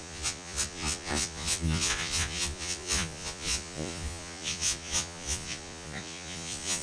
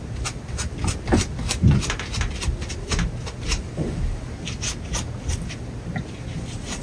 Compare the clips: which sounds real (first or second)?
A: second